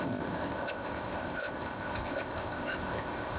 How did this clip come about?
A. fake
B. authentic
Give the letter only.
A